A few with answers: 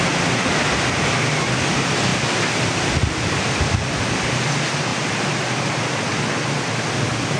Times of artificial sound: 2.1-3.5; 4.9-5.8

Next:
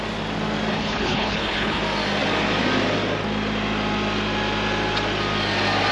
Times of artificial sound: 0.7-1.8

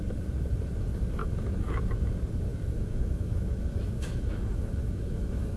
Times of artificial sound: 1.2-2.1; 2.5-5.6

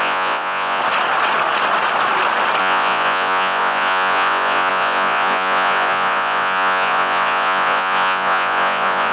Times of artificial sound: 0.0-0.8; 2.6-9.1

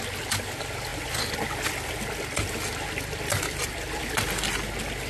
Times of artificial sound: none

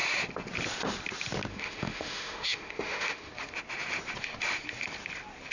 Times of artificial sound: 1.5-3.3

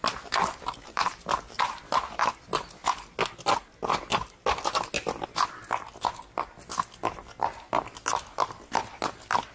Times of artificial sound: 0.0-1.6

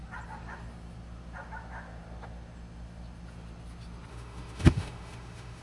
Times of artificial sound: 4.1-5.6